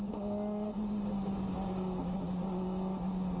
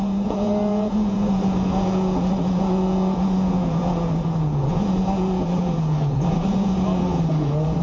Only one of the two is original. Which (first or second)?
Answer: first